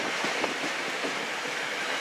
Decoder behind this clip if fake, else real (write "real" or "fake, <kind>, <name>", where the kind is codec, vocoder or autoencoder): real